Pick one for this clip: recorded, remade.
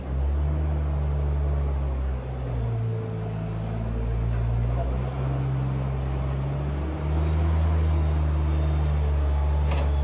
recorded